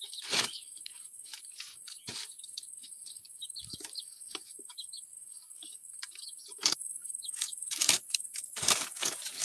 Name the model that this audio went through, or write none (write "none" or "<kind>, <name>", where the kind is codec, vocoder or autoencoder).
codec, DAC